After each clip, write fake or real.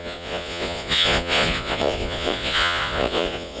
fake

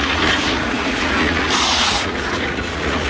fake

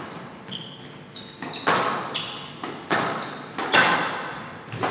real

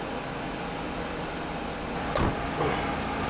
real